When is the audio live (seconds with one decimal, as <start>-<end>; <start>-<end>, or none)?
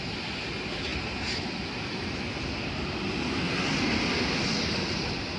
0.0-5.4